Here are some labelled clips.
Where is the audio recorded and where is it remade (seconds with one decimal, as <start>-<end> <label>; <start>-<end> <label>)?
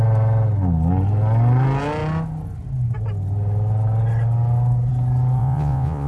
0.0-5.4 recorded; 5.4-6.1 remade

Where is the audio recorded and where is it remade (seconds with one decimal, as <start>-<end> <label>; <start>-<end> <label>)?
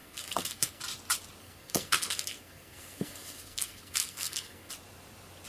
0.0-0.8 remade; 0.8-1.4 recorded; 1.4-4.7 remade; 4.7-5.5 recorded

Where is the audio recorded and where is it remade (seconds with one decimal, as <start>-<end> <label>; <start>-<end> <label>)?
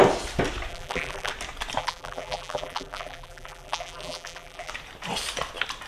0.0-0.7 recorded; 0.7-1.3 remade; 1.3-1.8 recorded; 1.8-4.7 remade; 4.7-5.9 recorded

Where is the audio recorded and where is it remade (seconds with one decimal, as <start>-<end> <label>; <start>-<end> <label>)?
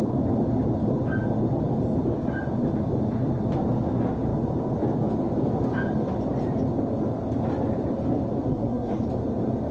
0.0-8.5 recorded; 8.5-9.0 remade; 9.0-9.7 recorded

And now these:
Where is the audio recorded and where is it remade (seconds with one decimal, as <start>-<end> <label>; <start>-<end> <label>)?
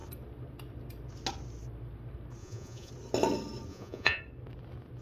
0.0-2.4 recorded; 2.4-2.9 remade; 2.9-3.7 recorded; 3.7-4.2 remade; 4.2-5.0 recorded